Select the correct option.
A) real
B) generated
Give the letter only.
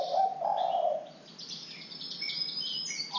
A